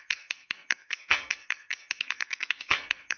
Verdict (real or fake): fake